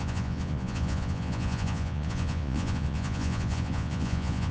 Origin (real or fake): fake